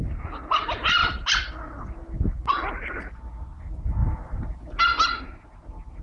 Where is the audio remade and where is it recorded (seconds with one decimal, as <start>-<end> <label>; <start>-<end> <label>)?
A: 0.0-6.0 recorded